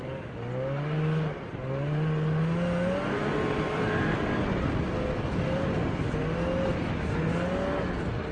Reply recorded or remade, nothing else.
recorded